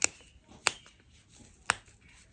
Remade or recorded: recorded